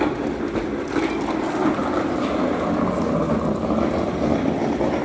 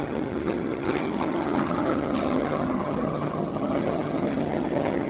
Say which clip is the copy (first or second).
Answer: second